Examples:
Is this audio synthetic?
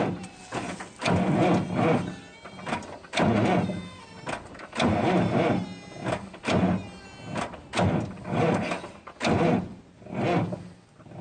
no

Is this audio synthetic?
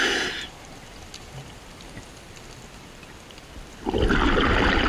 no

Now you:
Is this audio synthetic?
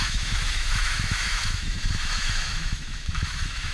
yes